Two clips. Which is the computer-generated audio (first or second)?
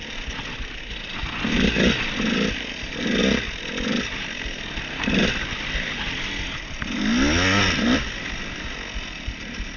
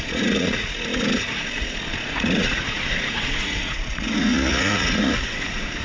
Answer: second